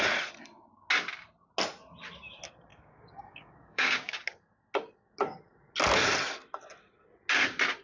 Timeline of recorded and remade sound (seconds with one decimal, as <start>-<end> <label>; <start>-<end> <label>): 0.0-2.7 recorded; 2.7-4.2 remade; 4.2-7.8 recorded